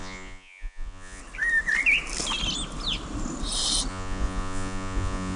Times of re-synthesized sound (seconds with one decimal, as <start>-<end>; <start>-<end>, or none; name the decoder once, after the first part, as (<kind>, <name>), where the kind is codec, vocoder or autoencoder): 0.0-1.2 (vocoder, Vocos); 3.9-5.4